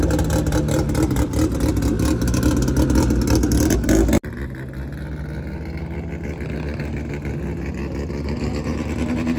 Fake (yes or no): no